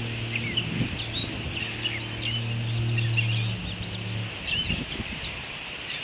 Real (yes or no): yes